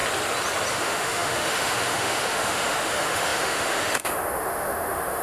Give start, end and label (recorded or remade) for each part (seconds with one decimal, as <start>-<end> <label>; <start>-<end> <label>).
0.0-0.7 recorded; 0.7-5.2 remade

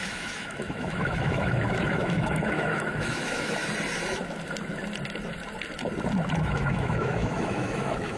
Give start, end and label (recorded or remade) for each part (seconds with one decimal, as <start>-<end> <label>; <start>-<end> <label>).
0.0-3.6 remade; 3.6-6.4 recorded; 6.4-8.2 remade

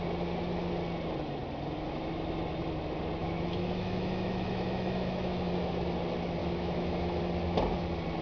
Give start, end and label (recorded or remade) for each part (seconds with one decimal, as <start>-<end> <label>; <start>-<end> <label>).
0.0-3.2 recorded; 3.2-5.5 remade; 5.5-6.4 recorded; 6.4-7.2 remade; 7.2-8.2 recorded